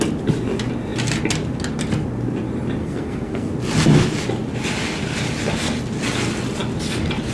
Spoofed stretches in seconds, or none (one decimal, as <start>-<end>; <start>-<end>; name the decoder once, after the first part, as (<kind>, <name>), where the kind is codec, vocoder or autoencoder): 2.8-3.5 (codec, SNAC)